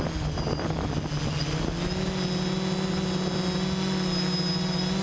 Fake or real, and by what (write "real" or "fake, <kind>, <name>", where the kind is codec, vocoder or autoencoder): real